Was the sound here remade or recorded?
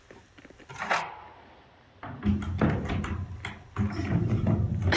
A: recorded